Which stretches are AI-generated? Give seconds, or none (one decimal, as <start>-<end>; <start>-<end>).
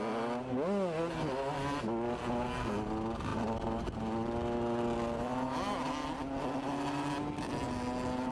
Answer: none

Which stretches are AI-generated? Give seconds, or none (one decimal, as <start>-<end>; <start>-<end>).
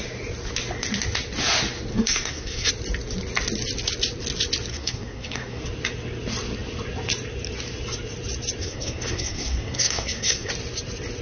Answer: 1.9-2.7; 4.7-5.6; 8.6-10.5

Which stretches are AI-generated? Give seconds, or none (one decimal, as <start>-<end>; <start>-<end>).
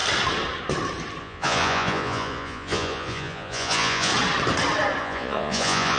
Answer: 1.2-4.1; 5.0-6.0